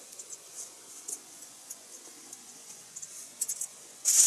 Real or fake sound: fake